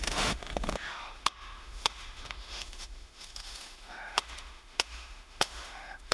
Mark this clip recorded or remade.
remade